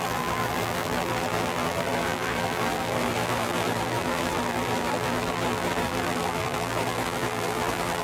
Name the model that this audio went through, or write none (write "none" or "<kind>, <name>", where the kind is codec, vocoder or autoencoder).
vocoder, BigVGAN v2